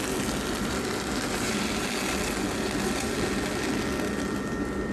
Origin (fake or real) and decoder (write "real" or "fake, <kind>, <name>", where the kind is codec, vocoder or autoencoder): real